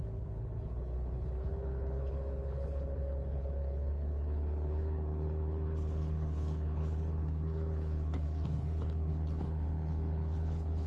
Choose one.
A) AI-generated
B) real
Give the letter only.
A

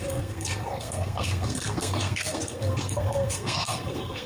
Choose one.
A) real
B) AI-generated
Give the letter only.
B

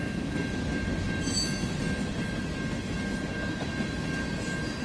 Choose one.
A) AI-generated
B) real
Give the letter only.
B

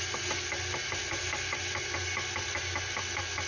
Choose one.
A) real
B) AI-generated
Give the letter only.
A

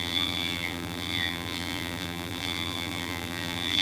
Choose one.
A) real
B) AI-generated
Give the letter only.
B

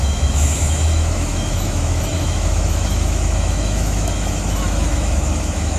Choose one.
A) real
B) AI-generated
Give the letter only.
B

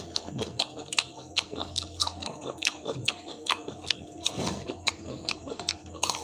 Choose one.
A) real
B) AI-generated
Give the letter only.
B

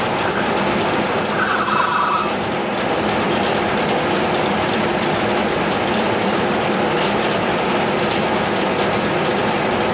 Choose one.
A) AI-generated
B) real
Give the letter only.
B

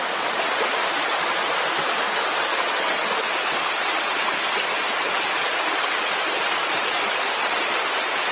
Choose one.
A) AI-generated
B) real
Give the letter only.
B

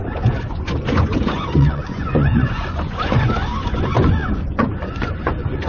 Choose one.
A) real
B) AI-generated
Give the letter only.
B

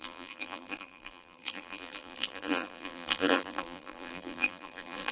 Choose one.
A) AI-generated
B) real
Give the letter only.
A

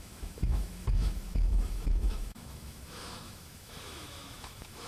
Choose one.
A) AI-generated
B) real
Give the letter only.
A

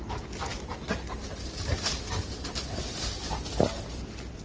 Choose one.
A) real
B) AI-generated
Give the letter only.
A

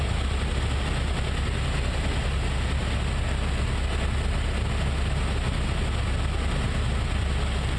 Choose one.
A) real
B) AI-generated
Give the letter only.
A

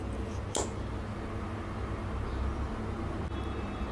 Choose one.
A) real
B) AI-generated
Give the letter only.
A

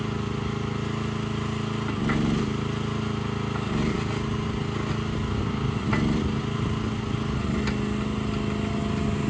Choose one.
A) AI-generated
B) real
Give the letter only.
B